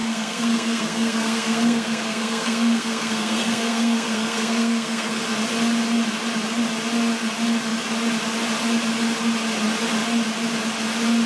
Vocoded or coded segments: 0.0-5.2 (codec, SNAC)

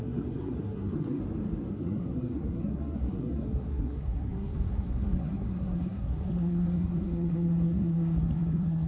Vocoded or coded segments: 0.0-1.2 (codec, SNAC); 1.7-8.9

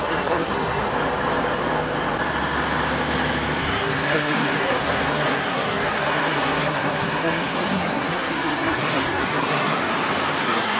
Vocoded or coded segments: 0.0-0.9 (codec, SNAC); 3.6-9.8; 10.4-10.8

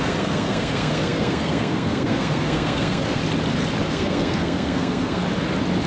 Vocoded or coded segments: 0.0-3.2 (codec, SNAC); 3.9-5.2